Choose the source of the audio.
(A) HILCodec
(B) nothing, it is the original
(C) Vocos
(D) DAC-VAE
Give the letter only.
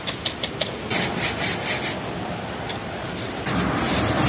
B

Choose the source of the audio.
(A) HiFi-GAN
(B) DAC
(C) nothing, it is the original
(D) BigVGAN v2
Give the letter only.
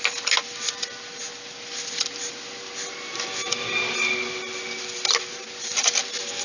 C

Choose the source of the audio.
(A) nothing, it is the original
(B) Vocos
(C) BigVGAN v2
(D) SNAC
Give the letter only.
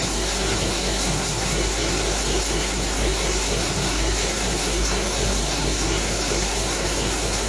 D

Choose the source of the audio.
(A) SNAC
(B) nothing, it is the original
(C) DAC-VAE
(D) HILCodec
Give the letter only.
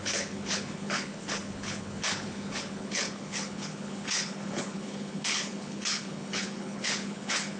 D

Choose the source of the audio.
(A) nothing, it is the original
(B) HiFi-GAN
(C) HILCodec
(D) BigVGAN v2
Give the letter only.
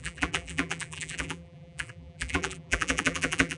D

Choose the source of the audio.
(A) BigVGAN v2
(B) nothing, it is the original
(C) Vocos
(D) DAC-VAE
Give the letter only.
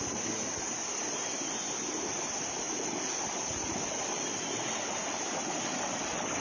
B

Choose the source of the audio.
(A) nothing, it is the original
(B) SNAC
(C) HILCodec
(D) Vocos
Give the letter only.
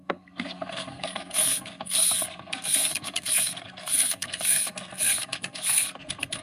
B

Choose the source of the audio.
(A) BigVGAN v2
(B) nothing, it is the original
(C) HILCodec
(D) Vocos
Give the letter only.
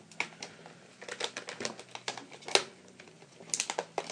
B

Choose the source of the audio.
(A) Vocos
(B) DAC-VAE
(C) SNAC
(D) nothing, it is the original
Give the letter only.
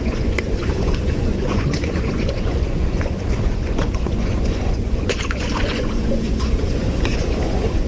A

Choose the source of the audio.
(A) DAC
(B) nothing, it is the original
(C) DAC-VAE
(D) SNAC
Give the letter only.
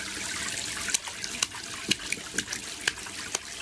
B